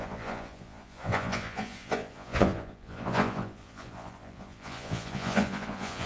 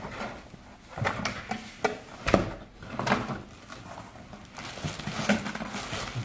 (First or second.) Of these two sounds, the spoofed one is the first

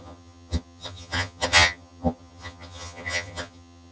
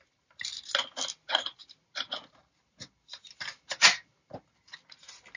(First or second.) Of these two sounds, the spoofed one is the first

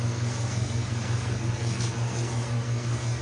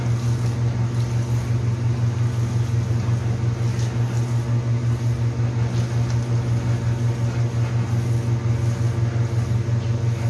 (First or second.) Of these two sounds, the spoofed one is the first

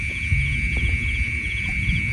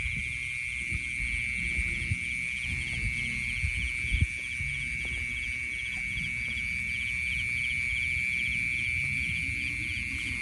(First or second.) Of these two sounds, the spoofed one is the first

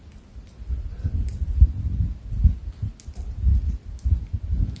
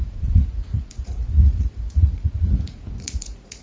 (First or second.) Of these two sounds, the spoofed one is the second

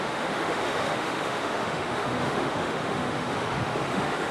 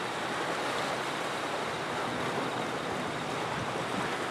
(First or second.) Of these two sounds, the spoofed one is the first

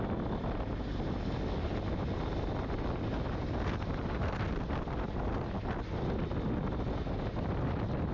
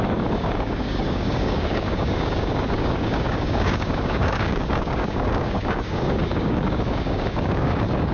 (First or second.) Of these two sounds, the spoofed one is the second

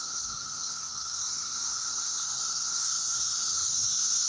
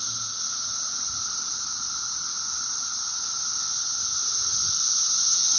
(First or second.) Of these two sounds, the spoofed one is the first